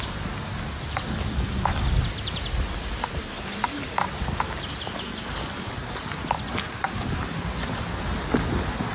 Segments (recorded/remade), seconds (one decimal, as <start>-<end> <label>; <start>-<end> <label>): 0.0-8.9 recorded